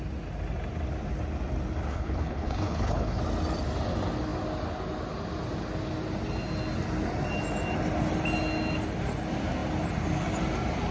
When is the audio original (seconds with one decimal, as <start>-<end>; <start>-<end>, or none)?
0.0-1.9; 3.2-10.9